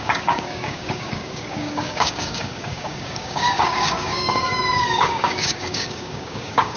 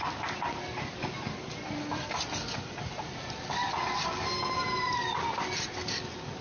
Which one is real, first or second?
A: second